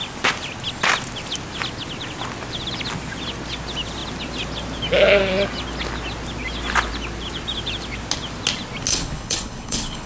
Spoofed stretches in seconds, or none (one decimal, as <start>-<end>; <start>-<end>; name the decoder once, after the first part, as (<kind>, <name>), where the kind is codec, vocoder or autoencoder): 8.9-10.1 (codec, HILCodec)